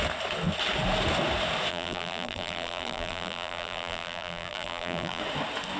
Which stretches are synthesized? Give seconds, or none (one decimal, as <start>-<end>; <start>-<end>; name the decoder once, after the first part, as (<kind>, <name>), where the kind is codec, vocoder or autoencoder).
1.7-5.2 (vocoder, BigVGAN v2)